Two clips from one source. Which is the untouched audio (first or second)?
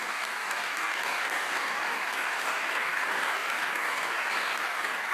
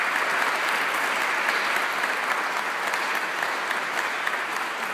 second